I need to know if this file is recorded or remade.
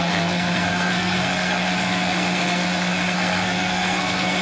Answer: remade